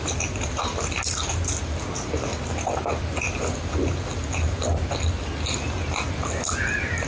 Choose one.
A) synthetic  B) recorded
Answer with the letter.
B